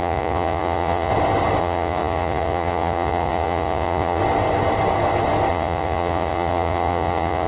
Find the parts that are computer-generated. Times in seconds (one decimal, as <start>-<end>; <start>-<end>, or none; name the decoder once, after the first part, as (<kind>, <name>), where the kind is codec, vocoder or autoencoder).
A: 0.0-1.1 (vocoder, Vocos); 1.6-4.2; 5.5-7.5